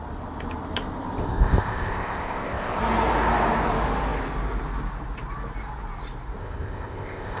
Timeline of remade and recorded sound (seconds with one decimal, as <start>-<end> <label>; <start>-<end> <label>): 0.0-1.2 recorded; 1.2-2.8 remade; 2.8-6.4 recorded; 6.4-7.4 remade